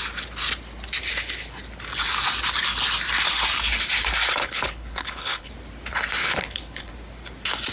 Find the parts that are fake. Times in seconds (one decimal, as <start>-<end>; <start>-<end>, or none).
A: 4.4-5.5; 6.2-6.9